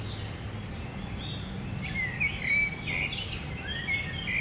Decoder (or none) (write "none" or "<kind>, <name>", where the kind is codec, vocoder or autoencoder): none